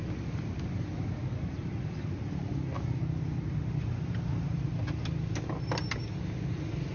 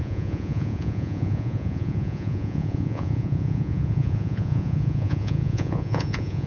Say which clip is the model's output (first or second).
second